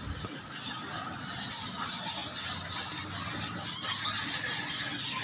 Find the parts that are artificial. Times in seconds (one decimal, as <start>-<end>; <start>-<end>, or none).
none